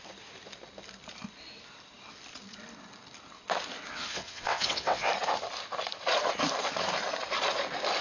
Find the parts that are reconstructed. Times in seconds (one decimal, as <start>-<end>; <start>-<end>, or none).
3.9-5.1